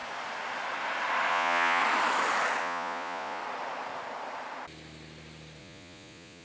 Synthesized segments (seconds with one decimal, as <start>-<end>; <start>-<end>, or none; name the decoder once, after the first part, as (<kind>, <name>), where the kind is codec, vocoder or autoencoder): 1.3-1.8 (vocoder, Vocos); 2.6-3.4; 5.6-6.4

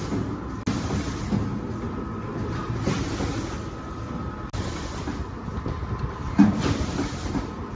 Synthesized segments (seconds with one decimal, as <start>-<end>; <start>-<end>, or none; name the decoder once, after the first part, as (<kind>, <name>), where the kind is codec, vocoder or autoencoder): none

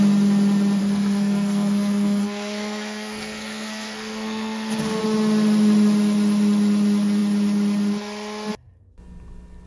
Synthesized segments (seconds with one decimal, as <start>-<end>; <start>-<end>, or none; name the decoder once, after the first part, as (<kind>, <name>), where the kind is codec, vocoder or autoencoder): 0.8-5.0 (codec, SNAC)

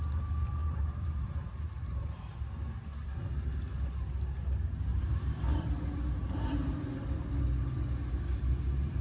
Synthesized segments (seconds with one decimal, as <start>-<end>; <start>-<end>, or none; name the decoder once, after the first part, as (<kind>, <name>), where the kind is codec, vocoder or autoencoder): 0.6-2.4 (vocoder, BigVGAN v2); 4.9-7.4

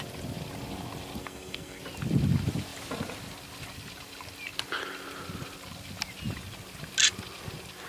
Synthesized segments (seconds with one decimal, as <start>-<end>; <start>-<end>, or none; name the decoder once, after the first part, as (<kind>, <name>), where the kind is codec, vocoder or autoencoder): 1.2-1.8 (codec, SNAC)